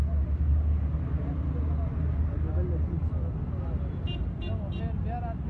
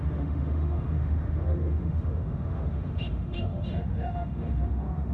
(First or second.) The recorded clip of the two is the first